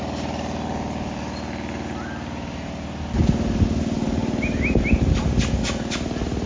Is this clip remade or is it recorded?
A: recorded